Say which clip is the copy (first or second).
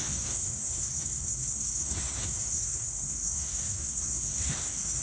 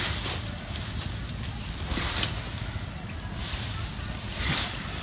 first